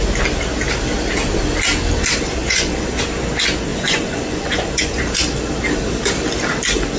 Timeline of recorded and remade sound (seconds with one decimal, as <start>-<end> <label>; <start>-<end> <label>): 0.0-2.4 recorded; 2.4-3.0 remade; 3.0-3.7 recorded; 3.7-5.0 remade; 5.0-7.0 recorded